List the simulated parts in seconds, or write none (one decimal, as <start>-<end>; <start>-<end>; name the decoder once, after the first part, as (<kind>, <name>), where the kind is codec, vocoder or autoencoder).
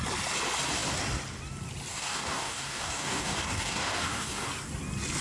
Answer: 1.9-4.5 (codec, DAC)